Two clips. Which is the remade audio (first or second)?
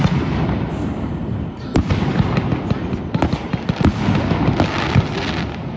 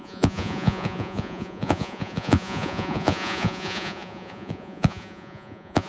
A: second